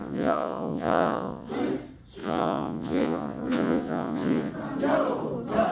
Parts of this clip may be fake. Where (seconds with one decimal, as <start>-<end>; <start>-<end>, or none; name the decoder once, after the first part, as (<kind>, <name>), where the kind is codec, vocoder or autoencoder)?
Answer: 0.0-1.5 (vocoder, Vocos); 2.2-4.5